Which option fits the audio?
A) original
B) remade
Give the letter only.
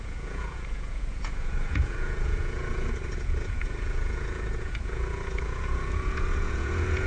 B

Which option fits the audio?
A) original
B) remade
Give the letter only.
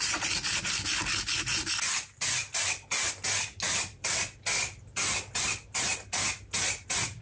A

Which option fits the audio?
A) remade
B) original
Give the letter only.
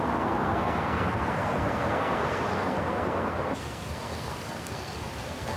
A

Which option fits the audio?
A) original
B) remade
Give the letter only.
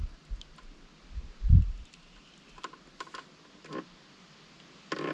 A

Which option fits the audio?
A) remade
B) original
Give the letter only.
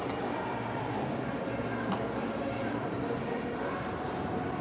A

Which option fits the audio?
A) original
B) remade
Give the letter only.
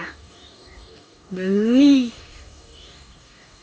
B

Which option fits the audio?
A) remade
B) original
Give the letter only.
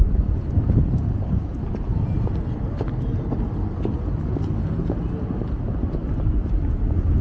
B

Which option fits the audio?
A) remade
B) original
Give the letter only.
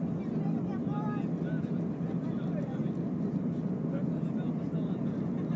B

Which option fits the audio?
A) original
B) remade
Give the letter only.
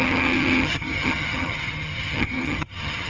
B